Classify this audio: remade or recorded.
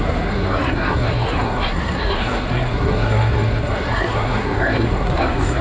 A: remade